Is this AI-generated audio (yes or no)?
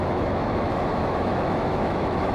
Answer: yes